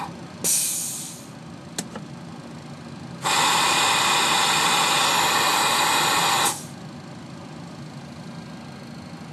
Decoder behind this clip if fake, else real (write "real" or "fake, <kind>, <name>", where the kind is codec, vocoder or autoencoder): real